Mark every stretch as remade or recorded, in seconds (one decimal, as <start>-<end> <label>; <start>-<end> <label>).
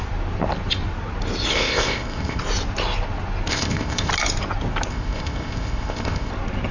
0.0-1.5 recorded; 1.5-2.4 remade; 2.4-3.5 recorded; 3.5-4.1 remade; 4.1-4.9 recorded; 4.9-6.3 remade; 6.3-6.7 recorded